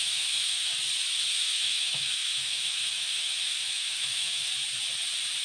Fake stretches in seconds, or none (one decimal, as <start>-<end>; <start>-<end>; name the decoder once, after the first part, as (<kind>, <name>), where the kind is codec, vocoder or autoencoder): 0.0-0.7 (autoencoder, DAC-VAE); 1.3-4.5